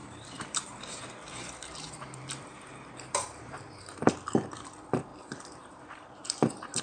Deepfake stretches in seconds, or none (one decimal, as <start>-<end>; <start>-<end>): 0.0-4.1; 5.1-6.8